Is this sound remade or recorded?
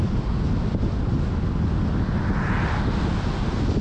recorded